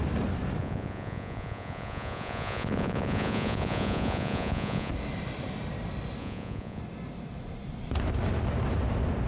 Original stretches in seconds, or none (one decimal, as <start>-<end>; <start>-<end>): 0.0-0.6; 4.9-6.2; 6.8-9.3